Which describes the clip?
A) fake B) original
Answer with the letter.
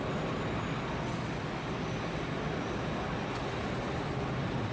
B